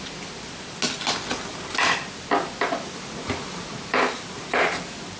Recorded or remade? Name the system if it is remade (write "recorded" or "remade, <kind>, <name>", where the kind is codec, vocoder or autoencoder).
recorded